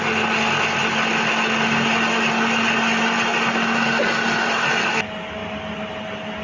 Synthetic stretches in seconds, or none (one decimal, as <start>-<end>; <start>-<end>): none